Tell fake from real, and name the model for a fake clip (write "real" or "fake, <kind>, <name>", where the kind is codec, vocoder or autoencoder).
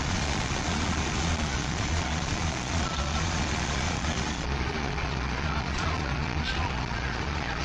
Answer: fake, vocoder, Vocos